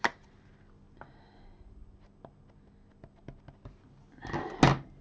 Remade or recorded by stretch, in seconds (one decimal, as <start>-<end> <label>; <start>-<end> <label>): 0.0-5.0 recorded